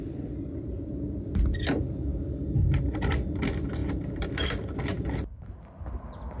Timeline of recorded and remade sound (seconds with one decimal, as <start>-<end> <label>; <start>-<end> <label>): 0.0-3.8 recorded; 3.8-5.1 remade; 5.1-6.4 recorded